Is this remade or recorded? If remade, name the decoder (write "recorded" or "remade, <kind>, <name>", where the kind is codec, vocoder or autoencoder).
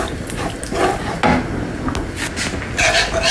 recorded